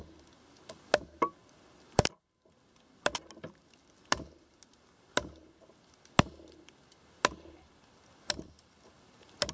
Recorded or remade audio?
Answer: recorded